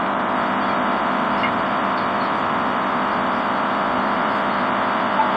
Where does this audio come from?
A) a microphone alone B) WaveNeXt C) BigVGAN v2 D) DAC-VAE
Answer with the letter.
A